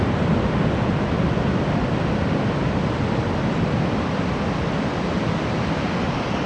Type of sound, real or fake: real